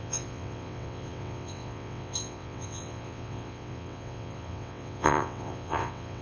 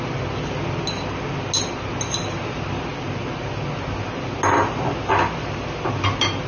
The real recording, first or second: second